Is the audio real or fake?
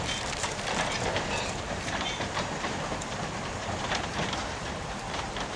fake